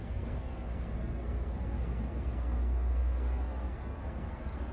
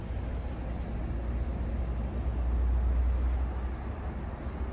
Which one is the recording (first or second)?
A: second